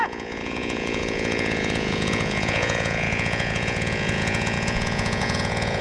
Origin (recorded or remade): remade